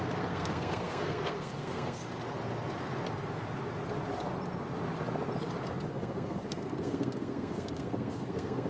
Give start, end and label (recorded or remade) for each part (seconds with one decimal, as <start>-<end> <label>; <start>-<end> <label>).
0.0-2.0 remade; 2.0-5.9 recorded; 5.9-8.7 remade